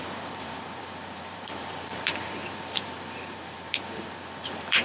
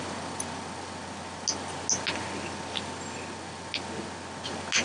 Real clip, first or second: second